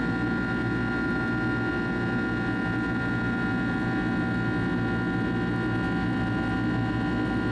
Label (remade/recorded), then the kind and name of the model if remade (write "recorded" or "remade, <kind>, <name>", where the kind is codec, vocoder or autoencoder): recorded